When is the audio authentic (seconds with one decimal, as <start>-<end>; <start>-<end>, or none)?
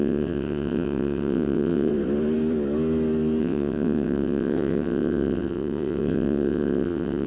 1.9-3.4